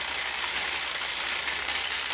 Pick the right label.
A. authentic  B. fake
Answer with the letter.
B